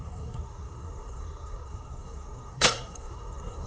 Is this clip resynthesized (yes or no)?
yes